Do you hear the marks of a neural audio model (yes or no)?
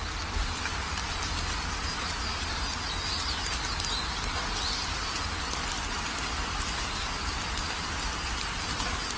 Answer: no